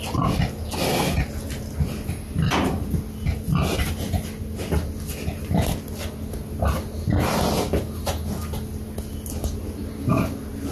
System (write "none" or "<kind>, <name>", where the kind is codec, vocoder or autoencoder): none